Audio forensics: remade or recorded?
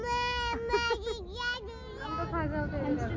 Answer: recorded